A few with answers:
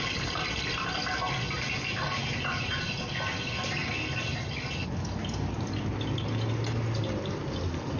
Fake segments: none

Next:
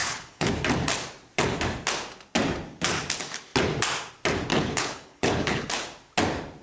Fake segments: 0.0-0.5 (codec, HILCodec); 4.5-5.7

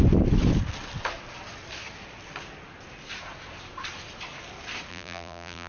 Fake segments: 4.9-5.7 (vocoder, BigVGAN v2)

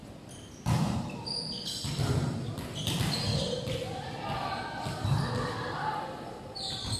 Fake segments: none

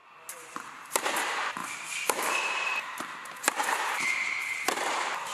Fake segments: 0.7-4.2 (vocoder, BigVGAN v2); 4.8-5.3